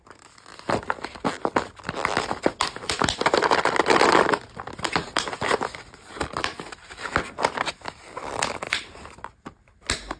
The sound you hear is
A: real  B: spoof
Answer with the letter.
A